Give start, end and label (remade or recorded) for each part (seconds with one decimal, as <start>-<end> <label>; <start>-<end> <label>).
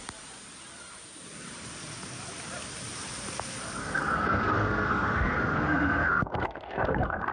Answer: 0.0-3.8 recorded; 3.8-7.3 remade